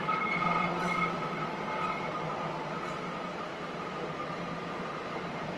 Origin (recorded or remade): recorded